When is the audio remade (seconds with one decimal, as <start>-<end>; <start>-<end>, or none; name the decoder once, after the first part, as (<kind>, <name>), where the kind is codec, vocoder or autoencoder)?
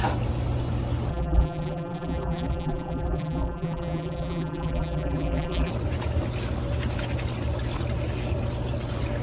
1.1-5.7 (vocoder, BigVGAN v2)